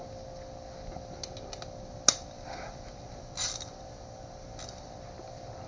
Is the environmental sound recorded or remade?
recorded